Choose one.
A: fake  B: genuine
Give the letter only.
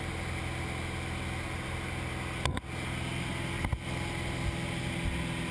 B